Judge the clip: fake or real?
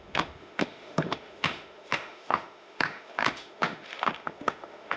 fake